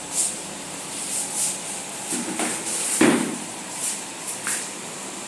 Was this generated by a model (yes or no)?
yes